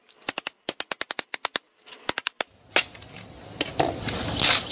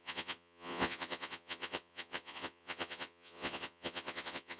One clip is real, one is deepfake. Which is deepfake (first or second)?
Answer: second